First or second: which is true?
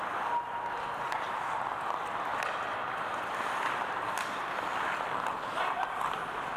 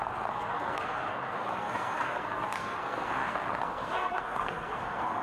first